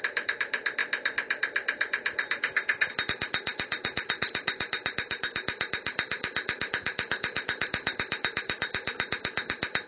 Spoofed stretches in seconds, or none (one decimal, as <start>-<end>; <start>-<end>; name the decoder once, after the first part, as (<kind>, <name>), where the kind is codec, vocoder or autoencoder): 0.0-0.8 (vocoder, BigVGAN v2); 3.1-9.9